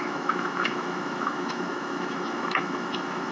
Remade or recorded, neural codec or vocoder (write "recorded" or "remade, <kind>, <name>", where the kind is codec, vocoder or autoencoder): remade, autoencoder, DAC-VAE